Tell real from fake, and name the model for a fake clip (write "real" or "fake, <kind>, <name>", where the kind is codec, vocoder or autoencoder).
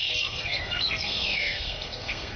fake, codec, SNAC